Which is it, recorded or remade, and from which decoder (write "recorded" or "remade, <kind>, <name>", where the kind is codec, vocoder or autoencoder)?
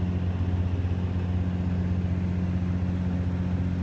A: recorded